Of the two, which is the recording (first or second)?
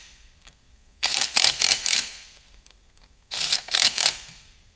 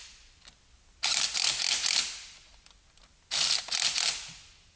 second